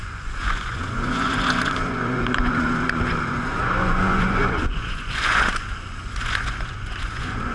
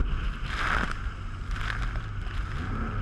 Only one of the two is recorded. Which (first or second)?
second